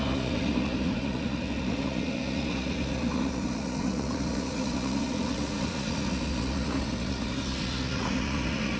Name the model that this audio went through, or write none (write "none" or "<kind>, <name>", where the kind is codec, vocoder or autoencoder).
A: vocoder, Vocos